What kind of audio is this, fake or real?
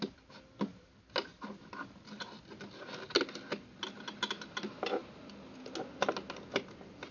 real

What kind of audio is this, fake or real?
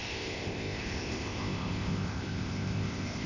fake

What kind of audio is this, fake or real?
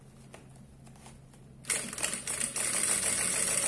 real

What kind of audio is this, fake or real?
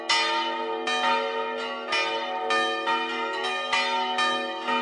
real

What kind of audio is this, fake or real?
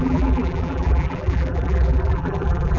fake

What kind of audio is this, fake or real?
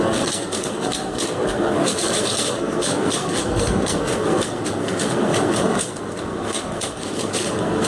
fake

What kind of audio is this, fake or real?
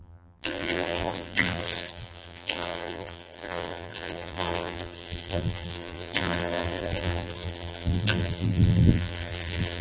fake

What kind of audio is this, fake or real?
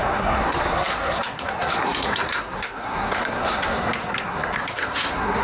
fake